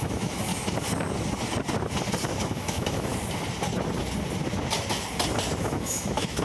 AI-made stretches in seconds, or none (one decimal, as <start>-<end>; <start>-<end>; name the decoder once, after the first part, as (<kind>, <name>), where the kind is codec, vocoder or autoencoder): 0.0-0.5 (autoencoder, DAC-VAE); 2.4-3.1; 5.6-6.4